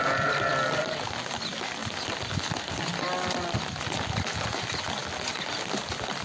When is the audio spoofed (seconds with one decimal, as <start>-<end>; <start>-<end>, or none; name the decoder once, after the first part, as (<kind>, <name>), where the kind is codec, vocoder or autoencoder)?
none